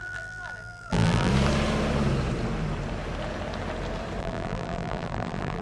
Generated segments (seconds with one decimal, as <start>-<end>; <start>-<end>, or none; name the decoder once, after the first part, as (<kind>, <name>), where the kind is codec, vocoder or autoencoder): 0.0-1.3 (vocoder, BigVGAN v2); 4.2-5.6